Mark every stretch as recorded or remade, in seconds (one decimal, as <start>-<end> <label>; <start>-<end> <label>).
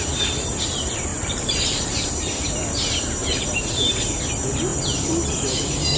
0.0-1.1 recorded; 1.1-2.1 remade; 2.1-3.2 recorded; 3.2-4.1 remade; 4.1-6.0 recorded